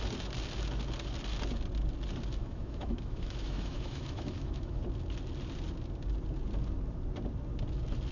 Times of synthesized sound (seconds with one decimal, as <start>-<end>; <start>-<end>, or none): 2.4-4.8